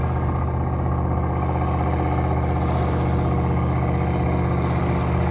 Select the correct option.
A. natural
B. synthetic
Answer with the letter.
A